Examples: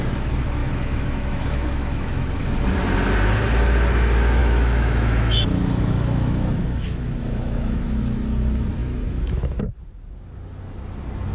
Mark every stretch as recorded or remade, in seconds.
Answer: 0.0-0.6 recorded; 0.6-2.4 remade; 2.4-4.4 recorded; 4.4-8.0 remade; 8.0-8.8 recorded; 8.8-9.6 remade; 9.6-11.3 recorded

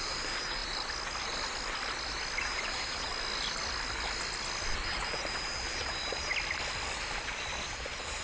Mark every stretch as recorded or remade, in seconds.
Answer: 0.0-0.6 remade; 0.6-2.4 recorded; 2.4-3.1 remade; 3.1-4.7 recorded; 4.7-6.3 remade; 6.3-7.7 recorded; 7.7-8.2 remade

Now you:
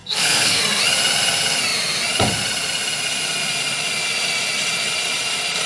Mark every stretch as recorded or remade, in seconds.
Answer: 0.0-0.6 remade; 0.6-5.7 recorded

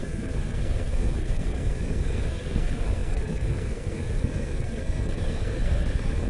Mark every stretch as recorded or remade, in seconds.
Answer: 0.0-6.3 remade

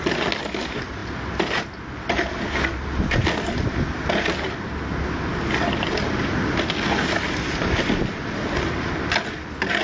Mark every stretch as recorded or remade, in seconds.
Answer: 0.0-9.8 recorded

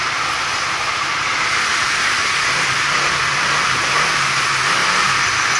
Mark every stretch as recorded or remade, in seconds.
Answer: 0.0-1.7 recorded; 1.7-2.5 remade; 2.5-4.8 recorded; 4.8-5.6 remade

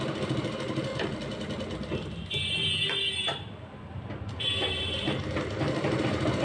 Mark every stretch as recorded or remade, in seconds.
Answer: 0.0-0.9 remade; 0.9-3.9 recorded; 3.9-6.4 remade